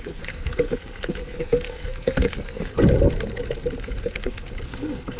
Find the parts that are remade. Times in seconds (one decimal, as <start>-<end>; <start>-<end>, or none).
0.0-2.7; 3.8-5.2